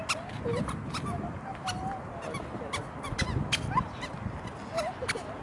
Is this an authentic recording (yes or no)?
yes